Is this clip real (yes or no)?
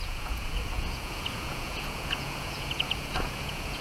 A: no